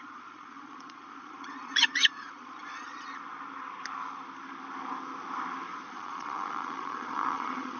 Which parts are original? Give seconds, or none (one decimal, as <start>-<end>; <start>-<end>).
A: 3.2-5.9